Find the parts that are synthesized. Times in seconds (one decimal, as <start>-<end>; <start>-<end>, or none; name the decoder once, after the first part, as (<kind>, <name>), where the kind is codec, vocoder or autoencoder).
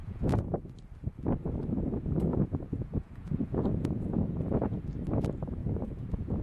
0.0-0.6 (vocoder, Vocos); 2.3-4.8; 5.6-6.4